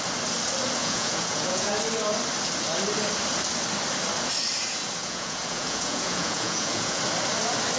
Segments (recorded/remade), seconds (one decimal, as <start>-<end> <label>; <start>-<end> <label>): 0.0-0.8 recorded; 0.8-1.7 remade; 1.7-5.0 recorded; 5.0-7.0 remade; 7.0-7.8 recorded